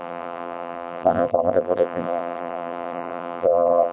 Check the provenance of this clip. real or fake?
fake